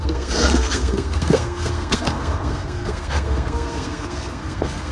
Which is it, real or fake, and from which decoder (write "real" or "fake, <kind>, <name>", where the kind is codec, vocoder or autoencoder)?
fake, codec, SNAC